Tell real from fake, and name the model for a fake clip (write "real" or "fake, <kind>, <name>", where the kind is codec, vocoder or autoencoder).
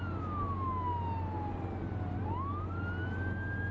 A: real